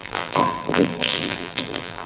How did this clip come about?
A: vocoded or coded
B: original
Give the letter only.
A